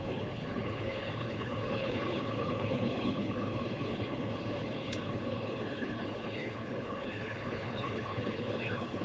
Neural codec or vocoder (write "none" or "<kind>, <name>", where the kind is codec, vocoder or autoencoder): codec, HILCodec